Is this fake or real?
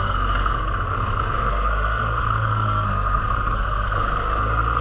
fake